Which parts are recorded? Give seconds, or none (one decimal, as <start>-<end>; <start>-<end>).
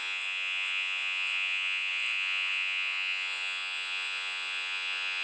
none